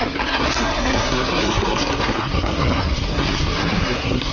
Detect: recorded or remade remade